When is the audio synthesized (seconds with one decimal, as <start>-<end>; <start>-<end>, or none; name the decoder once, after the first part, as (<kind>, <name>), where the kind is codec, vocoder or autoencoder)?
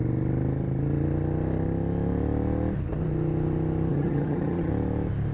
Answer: 3.9-4.7 (vocoder, HiFi-GAN)